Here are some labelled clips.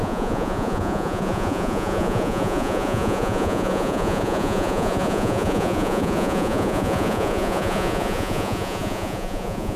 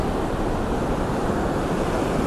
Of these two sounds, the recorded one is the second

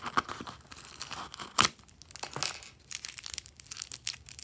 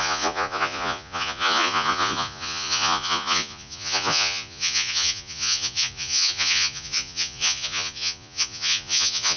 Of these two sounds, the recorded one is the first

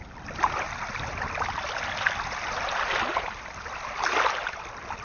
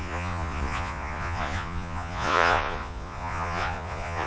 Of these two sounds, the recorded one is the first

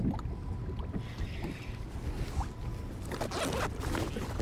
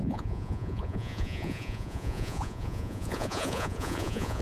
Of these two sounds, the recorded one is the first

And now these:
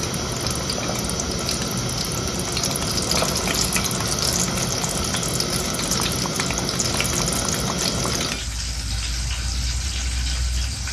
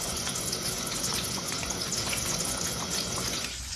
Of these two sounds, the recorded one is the first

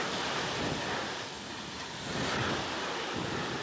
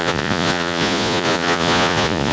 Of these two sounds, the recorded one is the first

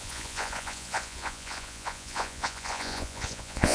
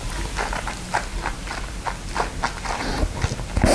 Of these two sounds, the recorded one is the second